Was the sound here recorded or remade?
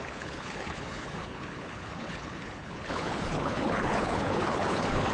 remade